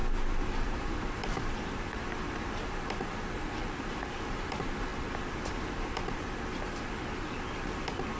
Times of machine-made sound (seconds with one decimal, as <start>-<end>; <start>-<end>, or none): 0.5-8.2